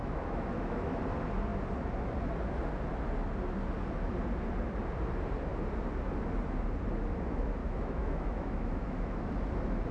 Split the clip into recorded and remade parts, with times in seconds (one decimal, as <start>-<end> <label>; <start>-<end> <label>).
0.0-1.0 remade; 1.0-7.6 recorded; 7.6-9.2 remade; 9.2-9.9 recorded